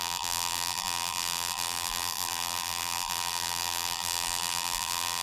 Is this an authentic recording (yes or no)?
no